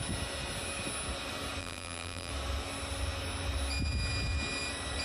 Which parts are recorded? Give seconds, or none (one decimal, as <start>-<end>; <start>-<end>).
0.0-1.6; 2.3-5.0

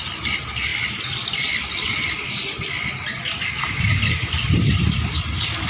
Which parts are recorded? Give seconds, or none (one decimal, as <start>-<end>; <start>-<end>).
0.0-5.7